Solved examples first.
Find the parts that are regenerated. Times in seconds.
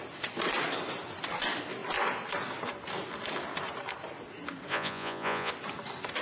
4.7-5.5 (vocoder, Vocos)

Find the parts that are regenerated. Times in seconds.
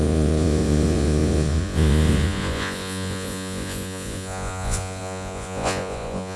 0.0-6.4 (vocoder, Vocos)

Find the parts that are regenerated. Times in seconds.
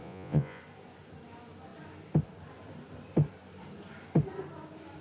0.0-0.6 (vocoder, Vocos)